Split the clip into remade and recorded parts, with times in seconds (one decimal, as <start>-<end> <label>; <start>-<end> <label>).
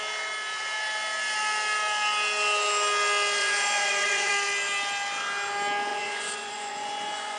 0.0-3.4 recorded; 3.4-4.3 remade; 4.3-5.9 recorded; 5.9-7.4 remade